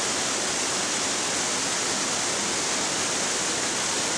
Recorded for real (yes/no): yes